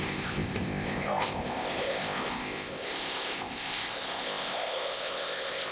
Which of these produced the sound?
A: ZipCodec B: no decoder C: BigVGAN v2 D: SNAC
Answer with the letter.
A